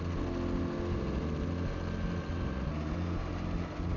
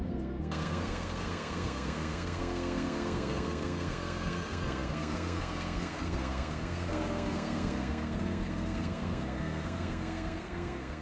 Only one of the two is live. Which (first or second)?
first